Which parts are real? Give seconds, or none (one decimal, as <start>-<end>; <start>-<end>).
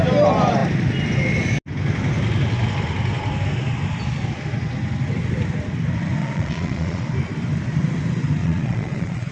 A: 0.0-6.2; 7.1-8.4